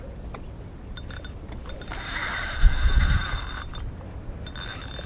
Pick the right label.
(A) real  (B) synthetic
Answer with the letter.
A